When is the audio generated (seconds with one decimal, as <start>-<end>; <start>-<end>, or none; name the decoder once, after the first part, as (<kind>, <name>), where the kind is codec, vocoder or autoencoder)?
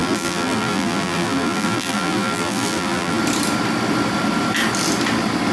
0.0-3.2 (vocoder, BigVGAN v2)